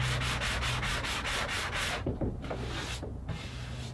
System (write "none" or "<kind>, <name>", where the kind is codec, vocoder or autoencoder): none